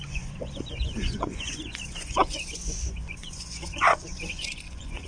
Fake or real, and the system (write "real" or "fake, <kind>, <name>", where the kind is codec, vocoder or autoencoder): fake, vocoder, Vocos